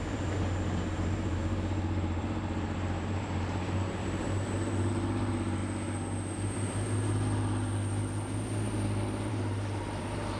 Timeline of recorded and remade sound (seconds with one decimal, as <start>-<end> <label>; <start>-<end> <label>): 0.0-5.6 remade; 5.6-9.3 recorded; 9.3-10.4 remade